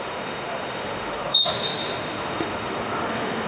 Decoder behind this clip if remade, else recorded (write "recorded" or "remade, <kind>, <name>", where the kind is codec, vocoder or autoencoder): remade, autoencoder, DAC-VAE